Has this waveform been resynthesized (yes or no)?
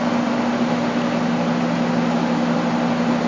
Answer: no